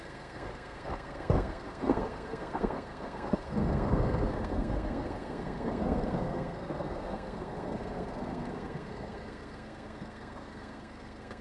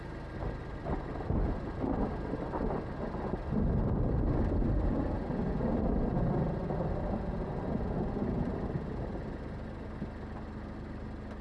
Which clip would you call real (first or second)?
second